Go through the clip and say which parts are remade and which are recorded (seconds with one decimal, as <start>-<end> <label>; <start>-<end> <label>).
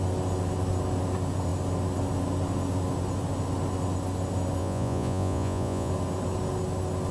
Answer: 0.0-4.6 recorded; 4.6-5.9 remade; 5.9-7.1 recorded